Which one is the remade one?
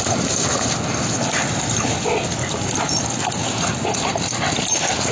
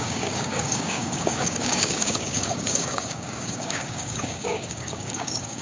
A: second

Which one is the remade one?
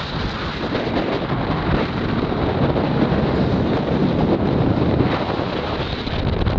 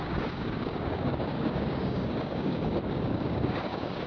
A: second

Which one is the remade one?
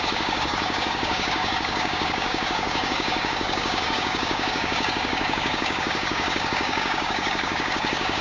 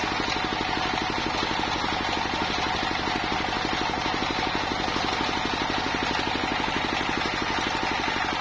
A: first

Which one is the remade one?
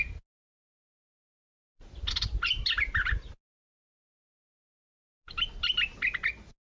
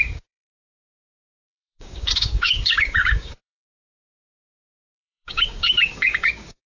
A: second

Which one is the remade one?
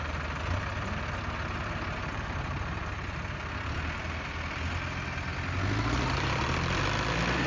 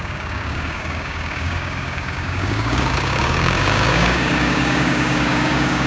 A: second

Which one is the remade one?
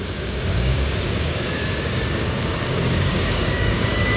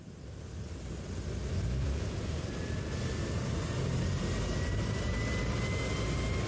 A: first